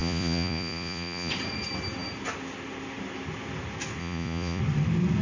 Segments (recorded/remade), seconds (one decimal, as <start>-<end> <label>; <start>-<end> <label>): 0.0-1.3 remade; 1.3-4.0 recorded; 4.0-4.6 remade; 4.6-5.2 recorded